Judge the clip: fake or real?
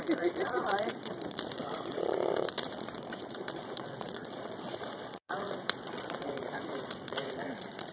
fake